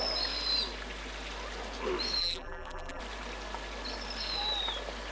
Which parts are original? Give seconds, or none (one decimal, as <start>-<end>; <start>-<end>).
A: 0.0-2.2; 3.0-5.1